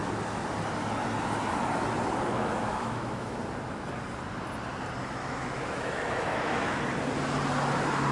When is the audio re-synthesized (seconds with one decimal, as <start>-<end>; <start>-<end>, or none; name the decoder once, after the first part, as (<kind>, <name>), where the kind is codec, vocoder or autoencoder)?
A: 2.3-3.4 (autoencoder, DAC-VAE); 5.2-6.8